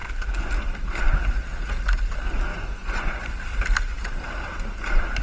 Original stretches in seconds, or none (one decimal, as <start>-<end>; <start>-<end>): 0.0-2.5; 3.3-5.2